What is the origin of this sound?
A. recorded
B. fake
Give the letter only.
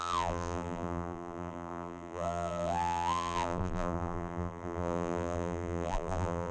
B